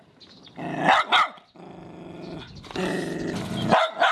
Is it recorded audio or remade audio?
recorded